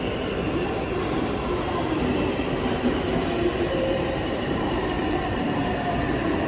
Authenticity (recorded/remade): remade